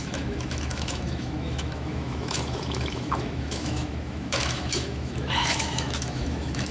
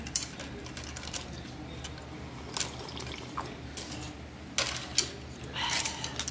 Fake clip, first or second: first